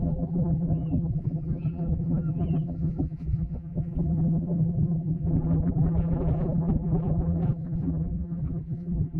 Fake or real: fake